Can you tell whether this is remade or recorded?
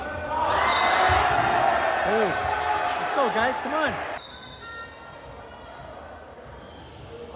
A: recorded